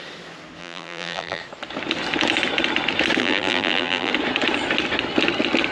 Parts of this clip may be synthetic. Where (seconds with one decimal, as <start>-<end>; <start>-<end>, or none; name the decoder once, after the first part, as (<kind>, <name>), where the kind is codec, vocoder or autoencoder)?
0.6-1.4 (vocoder, BigVGAN v2); 3.2-4.1